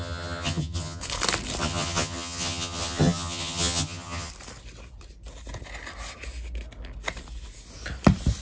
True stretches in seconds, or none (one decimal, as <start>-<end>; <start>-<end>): 1.0-1.6; 4.3-8.4